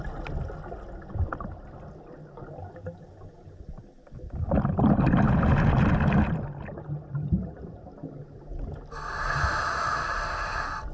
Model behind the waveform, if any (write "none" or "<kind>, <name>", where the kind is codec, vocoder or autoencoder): none